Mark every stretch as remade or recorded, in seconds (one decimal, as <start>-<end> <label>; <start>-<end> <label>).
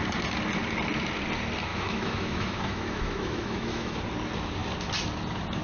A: 0.0-1.7 recorded; 1.7-4.0 remade; 4.0-5.6 recorded